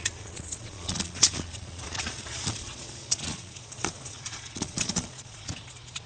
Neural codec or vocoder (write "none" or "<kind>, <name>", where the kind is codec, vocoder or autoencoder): vocoder, Vocos